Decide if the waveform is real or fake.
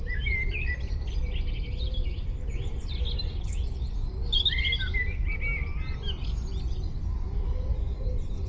real